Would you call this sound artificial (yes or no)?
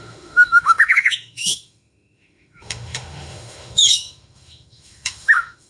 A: yes